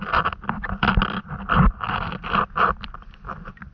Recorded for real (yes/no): yes